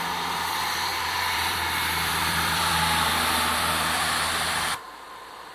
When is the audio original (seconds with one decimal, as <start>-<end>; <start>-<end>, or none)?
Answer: 0.0-0.9; 4.2-5.5